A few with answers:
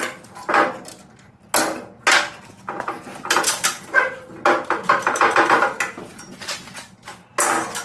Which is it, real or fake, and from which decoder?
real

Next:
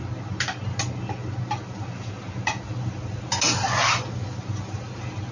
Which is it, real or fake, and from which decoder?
real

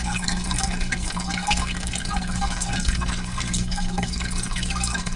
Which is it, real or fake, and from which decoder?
fake, codec, SNAC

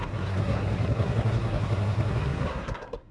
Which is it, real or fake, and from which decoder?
fake, codec, SNAC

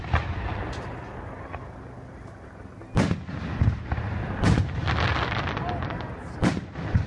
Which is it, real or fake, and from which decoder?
real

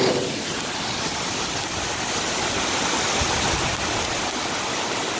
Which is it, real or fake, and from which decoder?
real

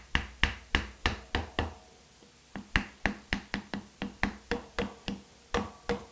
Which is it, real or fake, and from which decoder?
real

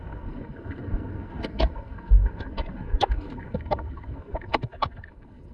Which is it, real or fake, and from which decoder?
fake, codec, SNAC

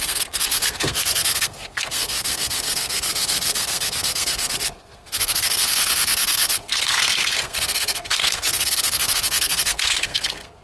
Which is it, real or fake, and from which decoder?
fake, codec, SNAC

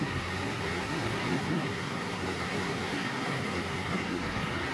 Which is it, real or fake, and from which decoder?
fake, codec, SNAC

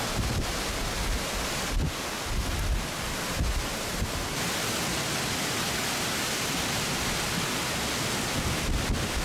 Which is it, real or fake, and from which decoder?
real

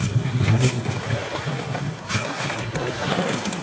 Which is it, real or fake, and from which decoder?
fake, codec, SNAC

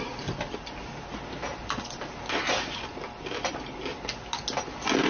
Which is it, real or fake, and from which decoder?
real